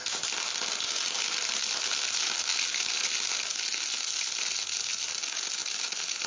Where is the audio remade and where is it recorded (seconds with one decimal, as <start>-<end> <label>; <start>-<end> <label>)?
0.0-6.3 recorded